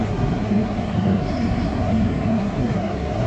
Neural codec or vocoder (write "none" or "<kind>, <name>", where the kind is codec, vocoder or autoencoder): codec, SNAC